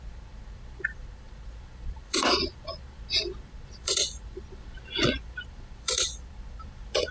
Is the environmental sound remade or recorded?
remade